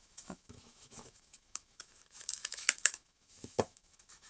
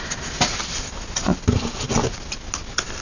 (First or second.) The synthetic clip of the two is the first